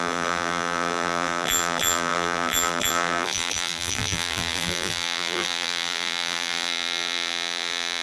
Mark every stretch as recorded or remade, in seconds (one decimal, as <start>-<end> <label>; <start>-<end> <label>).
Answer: 0.0-8.0 remade